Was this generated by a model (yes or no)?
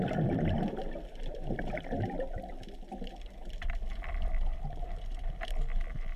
no